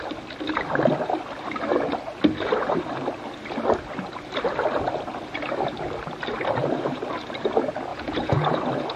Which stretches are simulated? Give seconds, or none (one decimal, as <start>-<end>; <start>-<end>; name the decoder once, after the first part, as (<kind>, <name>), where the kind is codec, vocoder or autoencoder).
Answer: 7.9-8.6 (vocoder, Vocos)